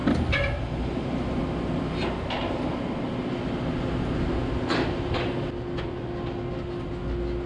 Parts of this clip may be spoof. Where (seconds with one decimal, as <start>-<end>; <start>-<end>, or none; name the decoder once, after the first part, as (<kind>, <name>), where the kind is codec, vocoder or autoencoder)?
0.0-1.4 (vocoder, BigVGAN v2)